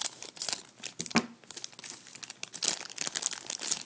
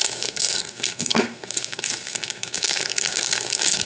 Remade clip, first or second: second